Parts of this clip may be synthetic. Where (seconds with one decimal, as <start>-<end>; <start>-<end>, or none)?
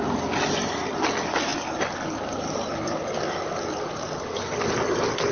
none